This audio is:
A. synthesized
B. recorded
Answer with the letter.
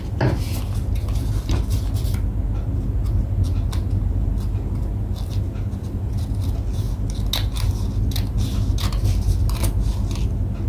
B